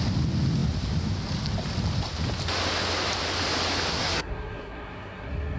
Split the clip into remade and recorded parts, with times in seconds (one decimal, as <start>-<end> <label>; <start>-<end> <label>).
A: 0.0-3.9 recorded; 3.9-5.6 remade